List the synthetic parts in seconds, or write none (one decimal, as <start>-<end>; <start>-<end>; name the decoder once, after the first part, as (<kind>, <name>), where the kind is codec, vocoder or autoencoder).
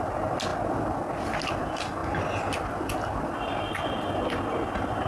none